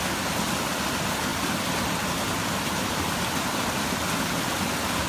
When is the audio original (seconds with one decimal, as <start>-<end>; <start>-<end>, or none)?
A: 0.0-1.3; 4.4-5.1